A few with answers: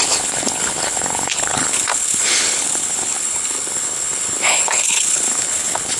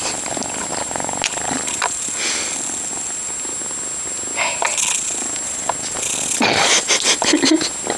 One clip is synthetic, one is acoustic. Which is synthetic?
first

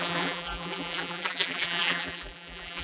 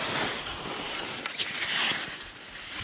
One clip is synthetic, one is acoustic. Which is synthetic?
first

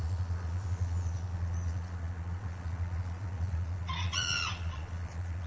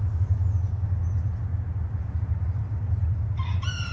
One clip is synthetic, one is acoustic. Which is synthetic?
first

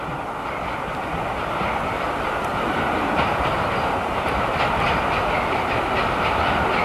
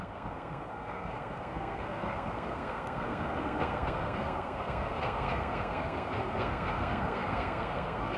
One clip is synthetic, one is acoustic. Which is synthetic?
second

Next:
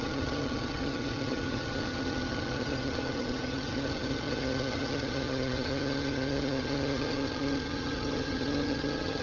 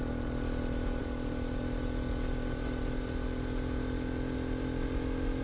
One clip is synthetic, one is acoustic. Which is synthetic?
first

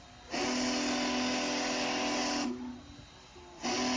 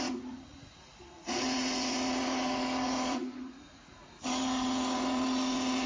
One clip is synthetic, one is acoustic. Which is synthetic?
second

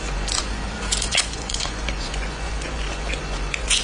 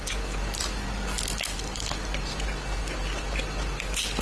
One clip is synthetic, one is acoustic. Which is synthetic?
first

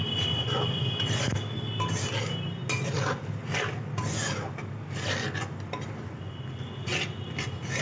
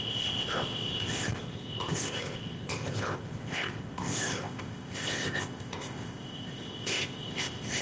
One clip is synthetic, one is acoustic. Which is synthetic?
second